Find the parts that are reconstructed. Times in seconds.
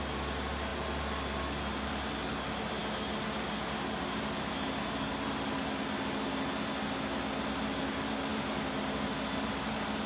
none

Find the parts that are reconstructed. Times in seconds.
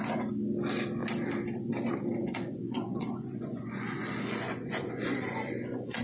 2.2-6.0 (vocoder, Vocos)